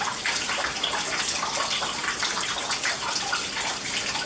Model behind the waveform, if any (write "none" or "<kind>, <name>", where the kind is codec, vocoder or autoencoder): none